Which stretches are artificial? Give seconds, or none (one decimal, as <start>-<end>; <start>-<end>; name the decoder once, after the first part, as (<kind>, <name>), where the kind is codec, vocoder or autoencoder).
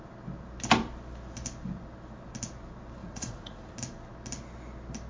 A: 3.0-3.7 (vocoder, Vocos)